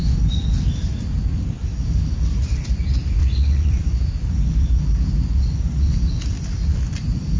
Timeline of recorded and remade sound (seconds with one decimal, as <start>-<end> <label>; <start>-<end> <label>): 0.0-3.2 recorded; 3.2-3.7 remade; 3.7-7.4 recorded